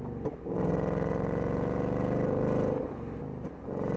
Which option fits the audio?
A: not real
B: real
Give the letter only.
B